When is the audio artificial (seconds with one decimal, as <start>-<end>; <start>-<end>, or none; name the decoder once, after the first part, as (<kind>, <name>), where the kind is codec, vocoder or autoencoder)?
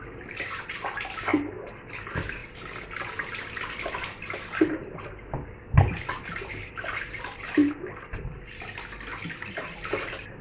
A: 0.0-1.3 (vocoder, BigVGAN v2); 1.8-2.4; 6.5-10.4